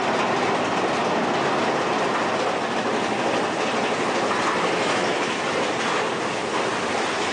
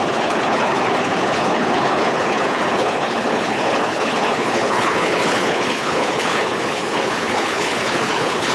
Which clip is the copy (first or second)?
second